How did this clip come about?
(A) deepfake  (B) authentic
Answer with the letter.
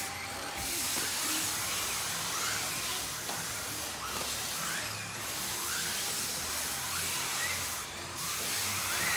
B